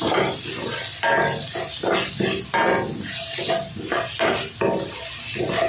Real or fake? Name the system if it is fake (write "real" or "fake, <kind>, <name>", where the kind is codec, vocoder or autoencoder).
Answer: real